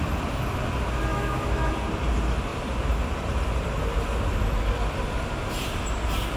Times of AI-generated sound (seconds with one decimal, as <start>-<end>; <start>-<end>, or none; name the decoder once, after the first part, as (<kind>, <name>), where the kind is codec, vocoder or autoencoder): 1.1-1.7 (autoencoder, DAC-VAE)